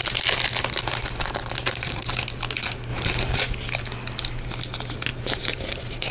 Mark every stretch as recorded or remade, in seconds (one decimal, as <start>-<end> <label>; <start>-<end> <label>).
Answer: 0.0-1.6 recorded; 1.6-2.2 remade; 2.2-2.9 recorded; 2.9-3.4 remade; 3.4-5.1 recorded; 5.1-6.1 remade